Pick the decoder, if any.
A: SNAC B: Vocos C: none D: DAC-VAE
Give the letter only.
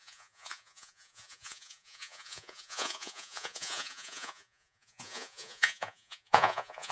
B